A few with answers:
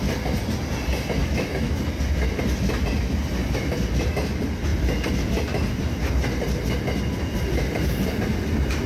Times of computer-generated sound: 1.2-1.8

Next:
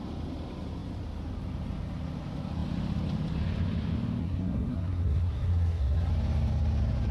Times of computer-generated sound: 4.2-6.1

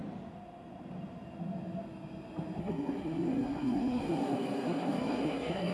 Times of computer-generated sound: 2.6-5.7

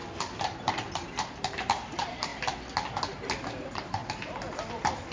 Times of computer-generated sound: 0.5-2.3; 3.5-4.0